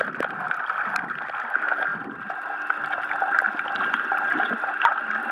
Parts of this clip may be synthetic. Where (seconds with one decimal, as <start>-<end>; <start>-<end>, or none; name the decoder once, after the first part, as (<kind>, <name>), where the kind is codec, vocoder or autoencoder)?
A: none